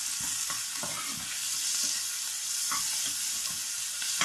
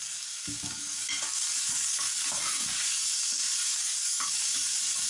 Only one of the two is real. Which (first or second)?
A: first